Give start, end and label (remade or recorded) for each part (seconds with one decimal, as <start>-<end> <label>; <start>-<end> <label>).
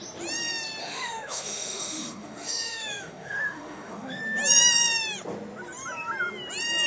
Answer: 0.0-0.8 recorded; 0.8-4.2 remade; 4.2-6.9 recorded